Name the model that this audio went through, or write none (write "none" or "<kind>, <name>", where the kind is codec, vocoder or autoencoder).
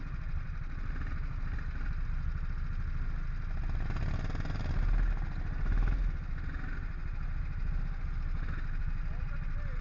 none